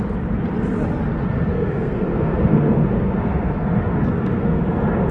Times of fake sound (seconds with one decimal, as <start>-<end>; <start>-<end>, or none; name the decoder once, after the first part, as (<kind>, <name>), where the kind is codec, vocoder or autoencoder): 1.5-4.6 (codec, SNAC)

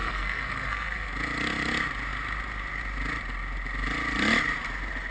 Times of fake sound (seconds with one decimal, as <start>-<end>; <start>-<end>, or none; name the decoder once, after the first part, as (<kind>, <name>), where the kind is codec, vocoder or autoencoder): 0.0-1.1 (codec, SNAC)

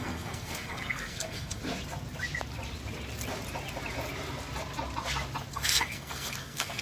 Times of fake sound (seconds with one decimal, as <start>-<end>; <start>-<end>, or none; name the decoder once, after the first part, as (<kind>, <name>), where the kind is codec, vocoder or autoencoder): 0.0-1.6 (codec, SNAC); 5.5-6.8

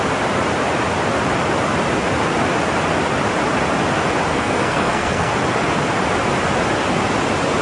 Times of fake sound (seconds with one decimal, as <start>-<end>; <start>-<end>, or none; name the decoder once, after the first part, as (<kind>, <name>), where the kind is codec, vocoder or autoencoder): 4.3-5.3 (codec, SNAC)

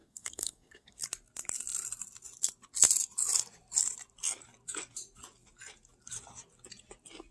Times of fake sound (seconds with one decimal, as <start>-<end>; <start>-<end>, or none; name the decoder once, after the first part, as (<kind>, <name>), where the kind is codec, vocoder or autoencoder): 0.0-1.0 (codec, SNAC)